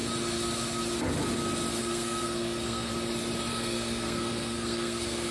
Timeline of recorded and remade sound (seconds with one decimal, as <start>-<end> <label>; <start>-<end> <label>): 0.0-1.8 recorded; 1.8-2.9 remade; 2.9-3.5 recorded; 3.5-5.3 remade

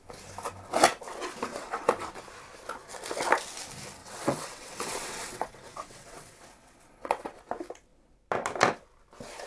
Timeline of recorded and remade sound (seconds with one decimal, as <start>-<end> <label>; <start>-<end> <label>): 0.0-1.5 recorded; 1.5-2.1 remade; 2.1-4.0 recorded; 4.0-7.4 remade; 7.4-9.5 recorded

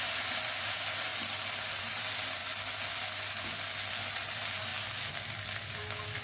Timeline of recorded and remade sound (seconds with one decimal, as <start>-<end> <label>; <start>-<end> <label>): 0.0-1.1 remade; 1.1-1.8 recorded; 1.8-2.4 remade; 2.4-3.9 recorded; 3.9-4.7 remade; 4.7-6.2 recorded